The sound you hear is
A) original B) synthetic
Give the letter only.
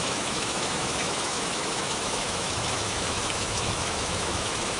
B